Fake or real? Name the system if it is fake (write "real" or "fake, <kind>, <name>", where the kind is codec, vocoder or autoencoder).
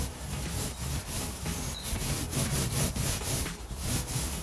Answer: real